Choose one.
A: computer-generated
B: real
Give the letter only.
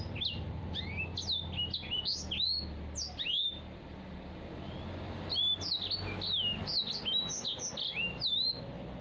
B